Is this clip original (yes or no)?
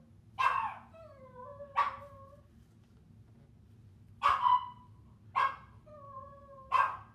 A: yes